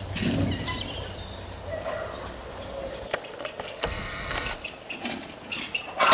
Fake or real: real